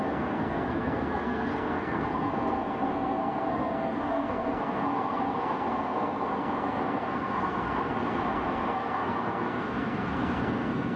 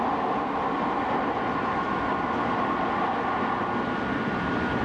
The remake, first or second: first